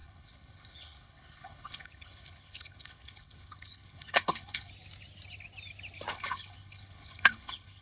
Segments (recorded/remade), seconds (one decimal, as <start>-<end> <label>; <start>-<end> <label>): 0.0-4.7 remade; 4.7-6.1 recorded; 6.1-7.8 remade